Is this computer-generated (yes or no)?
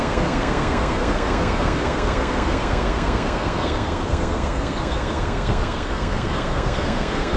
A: yes